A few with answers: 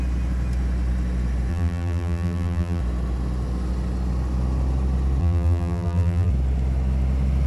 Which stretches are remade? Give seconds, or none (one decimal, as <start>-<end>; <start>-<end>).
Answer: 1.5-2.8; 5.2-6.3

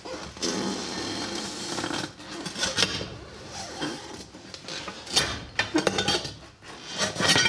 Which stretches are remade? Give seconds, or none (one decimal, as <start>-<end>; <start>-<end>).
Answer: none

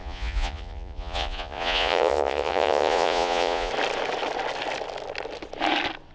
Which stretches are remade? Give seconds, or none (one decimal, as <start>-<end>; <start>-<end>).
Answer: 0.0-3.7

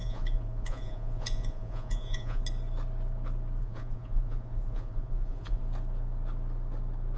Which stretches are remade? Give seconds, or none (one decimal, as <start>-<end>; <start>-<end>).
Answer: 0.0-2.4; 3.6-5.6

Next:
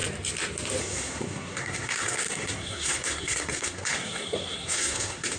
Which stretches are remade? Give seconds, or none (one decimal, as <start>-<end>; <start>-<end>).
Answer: 0.8-5.4